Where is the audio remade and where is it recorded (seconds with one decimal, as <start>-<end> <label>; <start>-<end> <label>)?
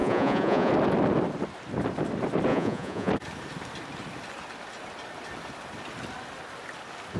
0.0-0.7 remade; 0.7-2.5 recorded; 2.5-3.1 remade; 3.1-7.2 recorded